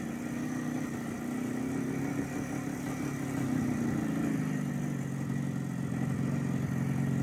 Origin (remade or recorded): recorded